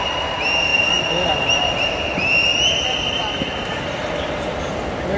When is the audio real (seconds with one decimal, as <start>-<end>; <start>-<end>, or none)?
0.0-0.7; 3.8-5.2